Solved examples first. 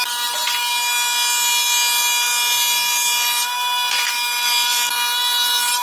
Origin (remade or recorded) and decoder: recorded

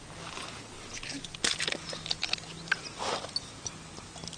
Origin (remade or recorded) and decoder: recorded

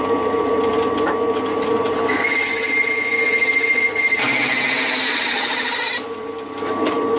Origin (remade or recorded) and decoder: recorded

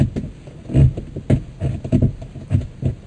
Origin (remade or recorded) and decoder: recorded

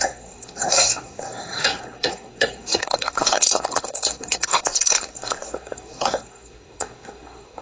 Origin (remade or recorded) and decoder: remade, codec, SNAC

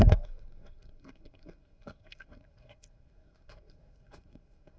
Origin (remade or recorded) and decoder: remade, codec, SNAC